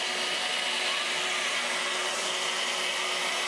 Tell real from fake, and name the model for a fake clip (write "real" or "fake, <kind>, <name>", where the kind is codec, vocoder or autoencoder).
real